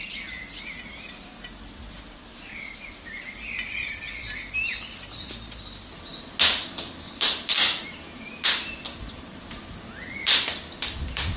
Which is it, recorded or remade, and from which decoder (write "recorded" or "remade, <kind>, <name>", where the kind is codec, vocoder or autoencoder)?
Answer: recorded